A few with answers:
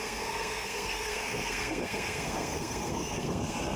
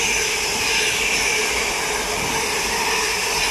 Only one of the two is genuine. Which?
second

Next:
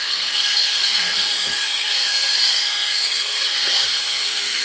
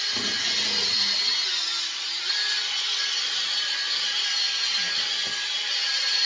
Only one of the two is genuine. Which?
second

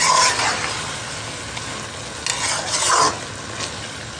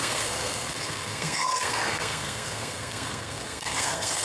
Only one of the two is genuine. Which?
first